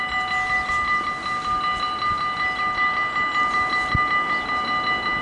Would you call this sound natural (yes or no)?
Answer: yes